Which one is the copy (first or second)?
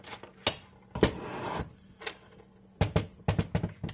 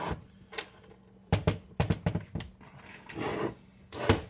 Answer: second